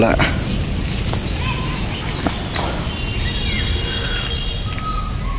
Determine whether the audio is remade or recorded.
recorded